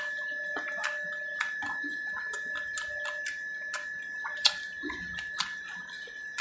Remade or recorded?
recorded